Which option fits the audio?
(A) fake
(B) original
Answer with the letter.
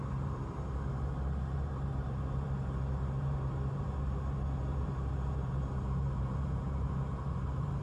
A